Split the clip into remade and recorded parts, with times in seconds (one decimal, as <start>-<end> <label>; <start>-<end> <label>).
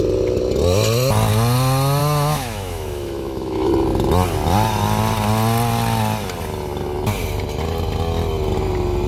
0.0-2.0 recorded; 2.0-3.7 remade; 3.7-9.1 recorded